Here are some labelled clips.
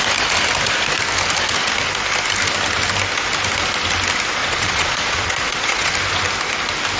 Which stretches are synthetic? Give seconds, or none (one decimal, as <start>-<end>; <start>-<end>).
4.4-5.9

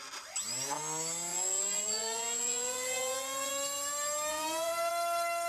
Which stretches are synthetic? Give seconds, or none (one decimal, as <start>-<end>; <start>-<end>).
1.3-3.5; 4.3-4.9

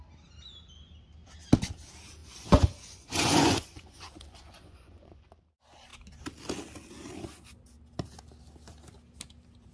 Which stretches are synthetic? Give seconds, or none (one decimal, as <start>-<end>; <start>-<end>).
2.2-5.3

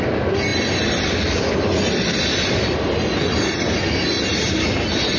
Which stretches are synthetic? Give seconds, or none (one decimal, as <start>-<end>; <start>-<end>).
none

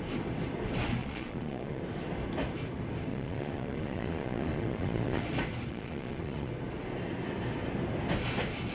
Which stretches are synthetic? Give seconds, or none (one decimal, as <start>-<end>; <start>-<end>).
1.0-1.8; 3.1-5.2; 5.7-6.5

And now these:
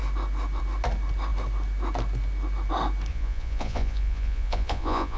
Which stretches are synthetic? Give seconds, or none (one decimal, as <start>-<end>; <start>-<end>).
3.1-5.2

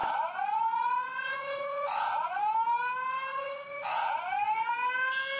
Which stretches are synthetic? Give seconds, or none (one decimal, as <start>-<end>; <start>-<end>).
0.0-2.4; 3.3-4.7

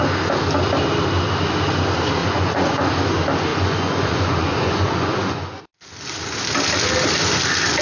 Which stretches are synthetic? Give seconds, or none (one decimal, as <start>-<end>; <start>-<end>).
2.2-2.9; 3.5-5.6